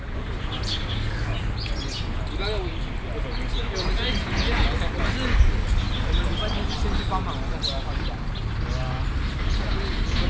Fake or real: real